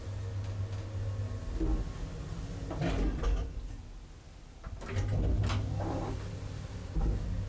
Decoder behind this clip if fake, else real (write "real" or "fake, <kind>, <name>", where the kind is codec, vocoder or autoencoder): real